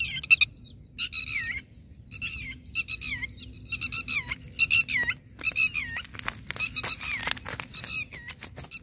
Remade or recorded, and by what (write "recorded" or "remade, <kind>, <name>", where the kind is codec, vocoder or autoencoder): recorded